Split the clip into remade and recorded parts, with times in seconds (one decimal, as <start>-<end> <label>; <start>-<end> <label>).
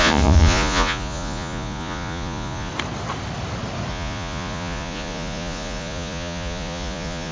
0.0-2.7 remade; 2.7-3.9 recorded; 3.9-7.3 remade